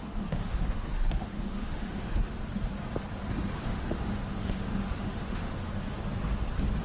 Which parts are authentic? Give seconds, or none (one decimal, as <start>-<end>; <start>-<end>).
2.4-3.5; 5.6-6.8